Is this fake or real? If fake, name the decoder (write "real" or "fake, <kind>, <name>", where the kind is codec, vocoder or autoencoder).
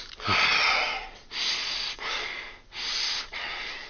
real